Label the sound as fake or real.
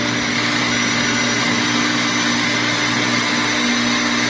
real